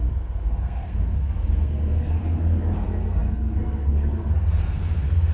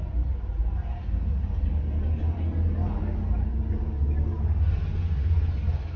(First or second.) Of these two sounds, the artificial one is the first